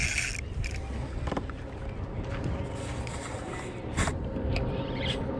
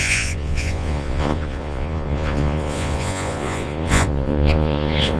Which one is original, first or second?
first